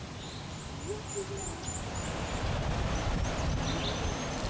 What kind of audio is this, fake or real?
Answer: real